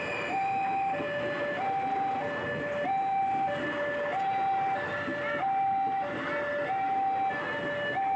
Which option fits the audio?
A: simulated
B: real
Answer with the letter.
B